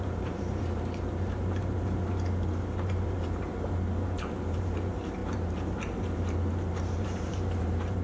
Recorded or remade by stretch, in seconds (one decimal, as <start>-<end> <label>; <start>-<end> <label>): 0.0-8.0 remade